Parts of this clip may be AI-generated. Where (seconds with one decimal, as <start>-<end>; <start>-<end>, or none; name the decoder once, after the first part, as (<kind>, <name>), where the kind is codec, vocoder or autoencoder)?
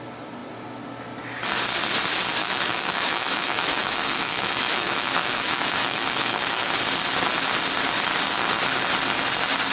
2.4-6.7 (autoencoder, DAC-VAE)